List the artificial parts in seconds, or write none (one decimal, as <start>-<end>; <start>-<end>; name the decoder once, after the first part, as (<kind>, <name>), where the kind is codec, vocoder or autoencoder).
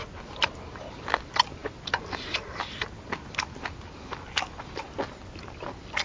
none